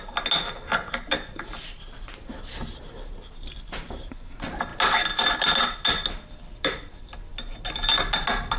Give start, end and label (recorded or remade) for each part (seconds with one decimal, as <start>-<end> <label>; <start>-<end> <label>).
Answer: 0.0-8.6 recorded